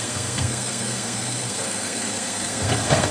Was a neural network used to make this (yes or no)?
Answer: yes